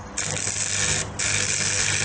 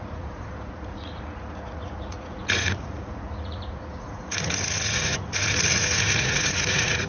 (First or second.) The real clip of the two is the first